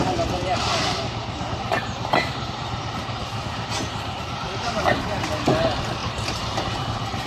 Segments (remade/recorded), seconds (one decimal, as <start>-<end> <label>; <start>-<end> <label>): 0.0-0.7 recorded; 0.7-4.4 remade; 4.4-6.0 recorded; 6.0-6.8 remade; 6.8-7.3 recorded